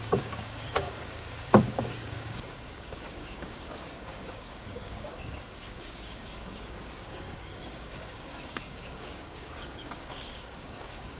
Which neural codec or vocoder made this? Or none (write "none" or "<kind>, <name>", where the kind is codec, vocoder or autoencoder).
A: codec, DAC